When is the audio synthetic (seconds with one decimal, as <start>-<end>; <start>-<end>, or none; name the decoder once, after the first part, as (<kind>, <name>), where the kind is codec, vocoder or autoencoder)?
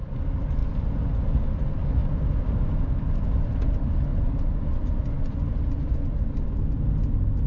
none